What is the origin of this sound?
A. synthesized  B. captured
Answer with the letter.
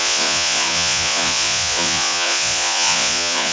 A